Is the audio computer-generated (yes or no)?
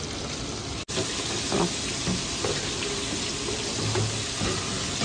no